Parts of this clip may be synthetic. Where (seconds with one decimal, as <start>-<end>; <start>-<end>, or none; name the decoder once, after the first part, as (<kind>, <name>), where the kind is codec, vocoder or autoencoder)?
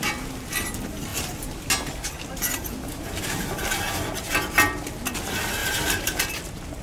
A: 5.6-6.3 (vocoder, BigVGAN v2)